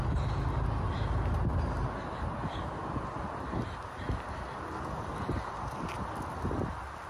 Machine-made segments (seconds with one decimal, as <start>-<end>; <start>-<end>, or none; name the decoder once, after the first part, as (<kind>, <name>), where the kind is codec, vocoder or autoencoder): none